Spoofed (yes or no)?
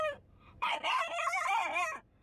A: yes